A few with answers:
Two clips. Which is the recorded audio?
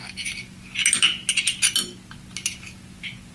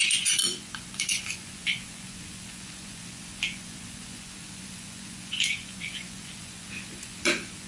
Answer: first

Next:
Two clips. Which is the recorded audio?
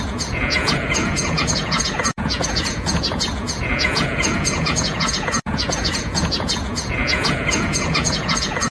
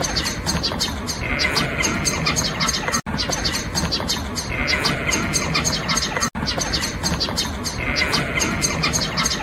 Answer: second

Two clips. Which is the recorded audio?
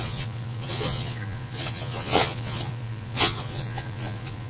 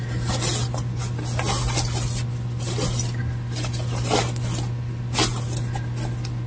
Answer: second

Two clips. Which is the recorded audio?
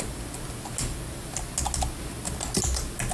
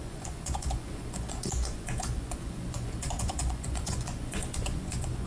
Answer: first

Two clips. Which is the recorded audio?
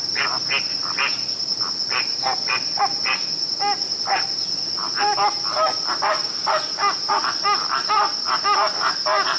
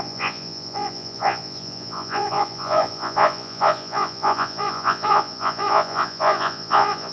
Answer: first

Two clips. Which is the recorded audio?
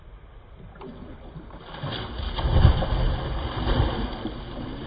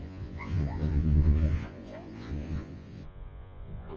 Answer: first